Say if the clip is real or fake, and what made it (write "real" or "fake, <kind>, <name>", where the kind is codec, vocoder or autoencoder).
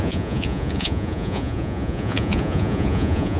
fake, vocoder, Vocos